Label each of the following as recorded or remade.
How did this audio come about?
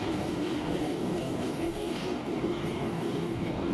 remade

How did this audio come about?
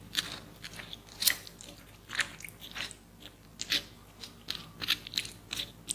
recorded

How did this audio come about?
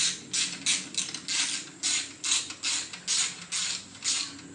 recorded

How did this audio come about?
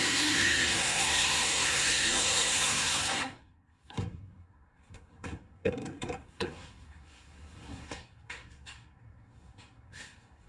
remade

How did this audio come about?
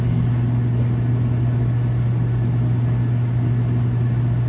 recorded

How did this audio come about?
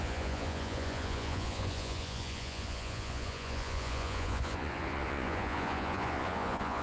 remade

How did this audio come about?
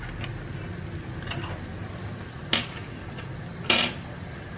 recorded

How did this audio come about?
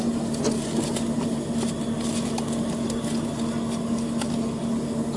recorded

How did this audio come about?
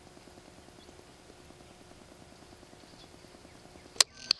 recorded